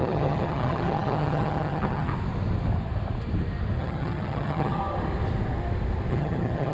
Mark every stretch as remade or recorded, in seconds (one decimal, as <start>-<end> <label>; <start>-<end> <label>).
0.0-2.1 remade; 2.1-3.8 recorded; 3.8-4.8 remade; 4.8-6.1 recorded; 6.1-6.7 remade